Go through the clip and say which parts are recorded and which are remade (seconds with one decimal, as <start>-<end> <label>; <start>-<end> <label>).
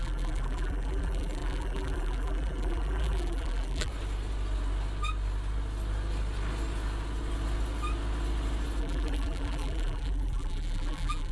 0.0-3.9 remade; 3.9-8.8 recorded; 8.8-11.3 remade